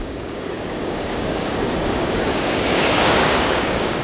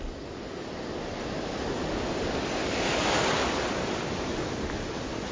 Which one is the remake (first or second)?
first